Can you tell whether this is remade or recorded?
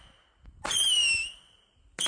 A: recorded